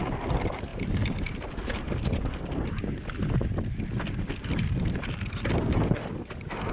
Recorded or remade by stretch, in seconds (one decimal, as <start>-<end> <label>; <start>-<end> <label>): 0.0-6.7 recorded